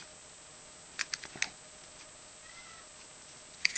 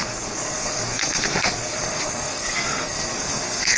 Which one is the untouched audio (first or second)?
first